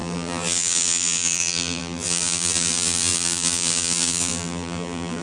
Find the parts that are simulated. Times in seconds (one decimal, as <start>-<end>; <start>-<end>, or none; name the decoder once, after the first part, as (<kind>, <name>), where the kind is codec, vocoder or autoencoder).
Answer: 0.0-5.2 (vocoder, BigVGAN v2)